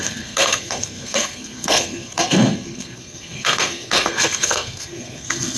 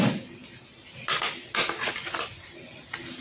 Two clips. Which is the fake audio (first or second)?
first